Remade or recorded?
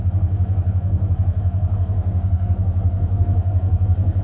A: remade